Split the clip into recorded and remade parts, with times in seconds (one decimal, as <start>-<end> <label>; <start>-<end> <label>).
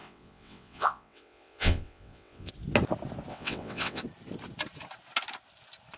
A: 0.0-2.5 remade; 2.5-3.3 recorded; 3.3-4.0 remade; 4.0-6.0 recorded